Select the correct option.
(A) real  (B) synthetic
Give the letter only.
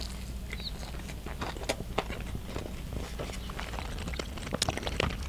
A